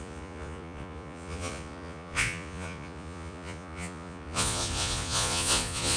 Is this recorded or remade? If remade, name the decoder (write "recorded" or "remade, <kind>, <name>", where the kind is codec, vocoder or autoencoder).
remade, vocoder, Vocos